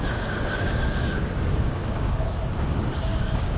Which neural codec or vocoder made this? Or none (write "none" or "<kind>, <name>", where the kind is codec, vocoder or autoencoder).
codec, DAC